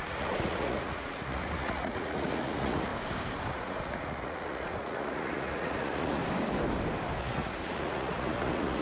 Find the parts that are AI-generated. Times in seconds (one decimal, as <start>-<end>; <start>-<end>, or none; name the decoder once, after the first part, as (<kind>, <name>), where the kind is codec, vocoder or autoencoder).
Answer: 0.0-2.9 (vocoder, Vocos); 3.5-6.2; 7.2-8.8